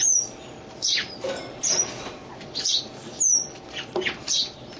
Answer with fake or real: real